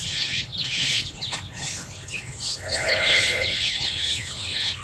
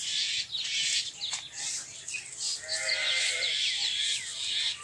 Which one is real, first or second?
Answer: second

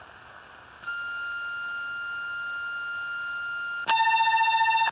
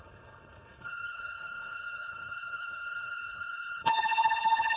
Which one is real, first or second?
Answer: first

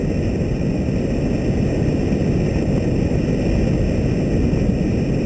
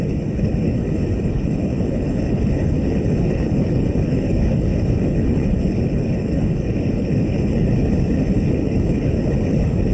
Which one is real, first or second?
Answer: first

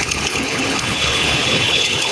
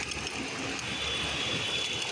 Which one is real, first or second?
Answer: second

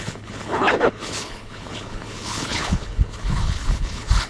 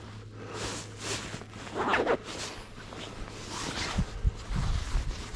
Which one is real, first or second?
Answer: second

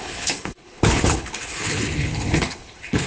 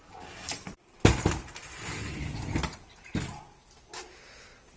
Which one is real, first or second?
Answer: second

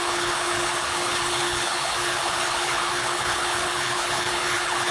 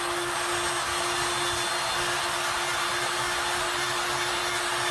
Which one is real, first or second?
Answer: second